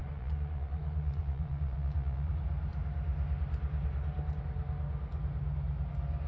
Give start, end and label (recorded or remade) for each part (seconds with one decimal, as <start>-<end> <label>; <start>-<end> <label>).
0.0-2.3 remade; 2.3-6.3 recorded